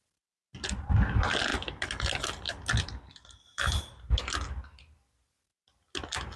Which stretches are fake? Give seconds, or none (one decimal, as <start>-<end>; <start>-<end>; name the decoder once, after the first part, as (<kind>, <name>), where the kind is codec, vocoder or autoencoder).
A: none